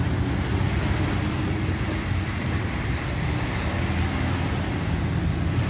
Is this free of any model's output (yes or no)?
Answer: yes